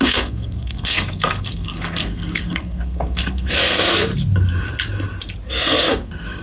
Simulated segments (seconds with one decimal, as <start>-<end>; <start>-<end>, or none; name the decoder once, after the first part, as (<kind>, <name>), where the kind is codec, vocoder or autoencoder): 0.0-4.1 (codec, SNAC); 5.5-6.4